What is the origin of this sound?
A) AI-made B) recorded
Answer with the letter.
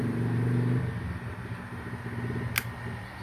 B